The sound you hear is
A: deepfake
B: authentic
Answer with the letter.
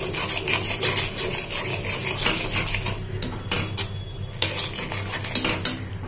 B